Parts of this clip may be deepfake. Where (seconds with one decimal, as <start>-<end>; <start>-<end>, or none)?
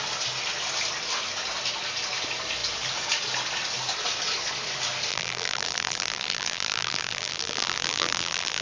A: 5.1-8.6